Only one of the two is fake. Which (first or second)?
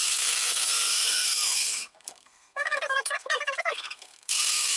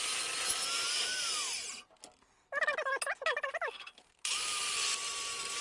first